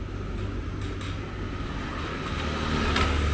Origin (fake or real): real